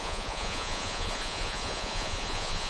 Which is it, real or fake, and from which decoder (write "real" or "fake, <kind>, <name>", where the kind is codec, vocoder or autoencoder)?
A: fake, vocoder, Vocos